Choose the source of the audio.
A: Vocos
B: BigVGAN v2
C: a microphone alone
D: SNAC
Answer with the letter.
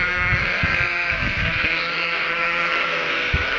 D